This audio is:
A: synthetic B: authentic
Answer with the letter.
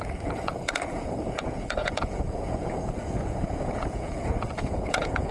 A